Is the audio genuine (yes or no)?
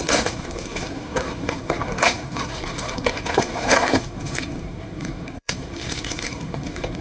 no